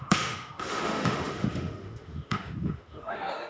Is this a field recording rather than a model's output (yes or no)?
no